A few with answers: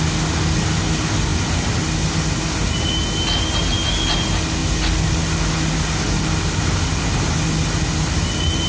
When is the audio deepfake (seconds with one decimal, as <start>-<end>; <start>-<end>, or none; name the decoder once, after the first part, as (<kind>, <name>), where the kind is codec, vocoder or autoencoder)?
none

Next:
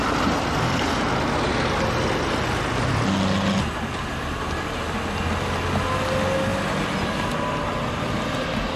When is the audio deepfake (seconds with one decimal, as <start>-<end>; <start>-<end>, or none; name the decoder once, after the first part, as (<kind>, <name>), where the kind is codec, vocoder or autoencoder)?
none

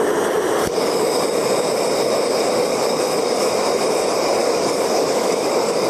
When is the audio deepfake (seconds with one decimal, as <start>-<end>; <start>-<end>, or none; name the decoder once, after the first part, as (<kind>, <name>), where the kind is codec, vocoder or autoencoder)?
0.6-1.2 (codec, DAC); 2.7-3.5; 4.4-5.9